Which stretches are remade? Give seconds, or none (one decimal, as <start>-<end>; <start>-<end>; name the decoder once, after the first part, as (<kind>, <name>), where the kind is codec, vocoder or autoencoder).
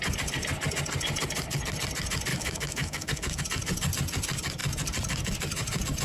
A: 2.3-3.4 (autoencoder, DAC-VAE)